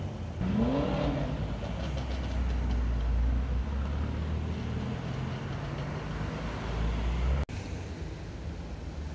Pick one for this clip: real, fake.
real